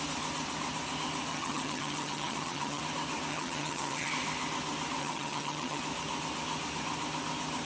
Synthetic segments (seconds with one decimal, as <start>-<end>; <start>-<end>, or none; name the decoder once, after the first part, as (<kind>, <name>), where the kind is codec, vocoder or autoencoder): 1.3-2.8 (vocoder, HiFi-GAN); 3.3-4.1; 5.0-5.8